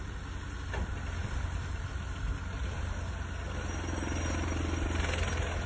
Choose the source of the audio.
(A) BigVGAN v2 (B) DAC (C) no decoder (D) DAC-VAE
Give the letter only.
C